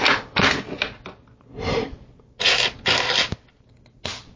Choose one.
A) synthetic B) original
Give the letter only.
B